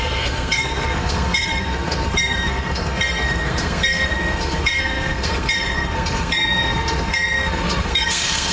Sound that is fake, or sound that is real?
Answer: fake